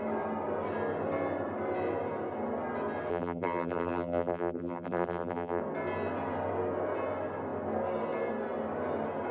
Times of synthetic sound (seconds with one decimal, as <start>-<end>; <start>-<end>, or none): 3.1-5.6